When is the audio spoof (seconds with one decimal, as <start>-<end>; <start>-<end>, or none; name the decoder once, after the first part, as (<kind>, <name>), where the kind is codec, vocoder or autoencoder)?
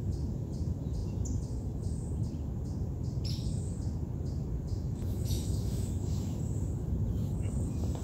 4.7-6.3 (autoencoder, DAC-VAE)